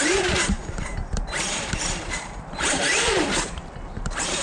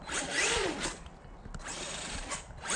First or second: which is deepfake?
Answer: first